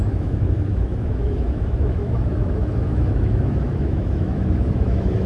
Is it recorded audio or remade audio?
remade